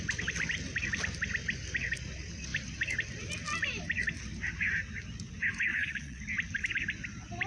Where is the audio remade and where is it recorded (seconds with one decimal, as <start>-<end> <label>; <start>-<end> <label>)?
0.0-5.7 recorded; 5.7-6.2 remade; 6.2-7.5 recorded